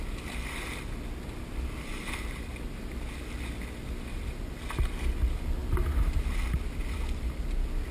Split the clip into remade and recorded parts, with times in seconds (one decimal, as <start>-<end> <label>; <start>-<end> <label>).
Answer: 0.0-7.9 recorded